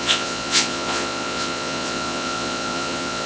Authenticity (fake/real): fake